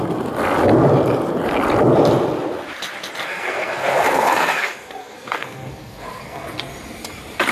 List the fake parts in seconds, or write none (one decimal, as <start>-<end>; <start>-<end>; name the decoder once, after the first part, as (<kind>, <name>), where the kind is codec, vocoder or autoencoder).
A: 3.2-6.6 (codec, SNAC)